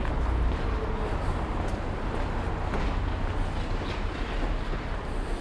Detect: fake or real real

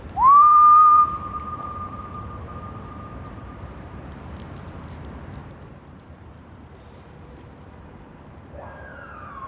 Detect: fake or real fake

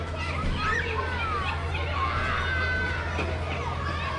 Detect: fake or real real